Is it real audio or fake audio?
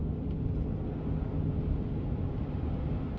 real